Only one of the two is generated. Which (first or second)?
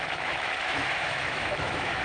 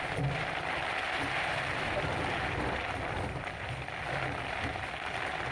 first